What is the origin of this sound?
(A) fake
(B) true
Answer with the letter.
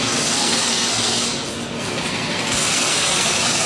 A